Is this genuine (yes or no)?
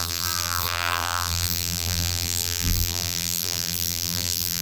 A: no